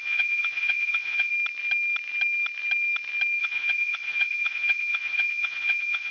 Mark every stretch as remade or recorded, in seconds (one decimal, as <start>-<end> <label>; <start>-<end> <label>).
0.0-1.3 remade; 1.3-3.4 recorded; 3.4-6.1 remade